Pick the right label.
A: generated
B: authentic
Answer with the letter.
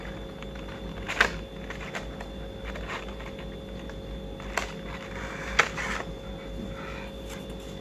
B